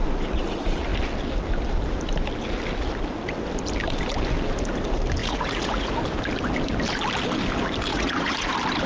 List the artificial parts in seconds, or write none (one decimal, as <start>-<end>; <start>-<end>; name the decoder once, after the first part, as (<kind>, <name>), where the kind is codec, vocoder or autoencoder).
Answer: 5.2-5.9 (vocoder, Vocos); 7.9-8.5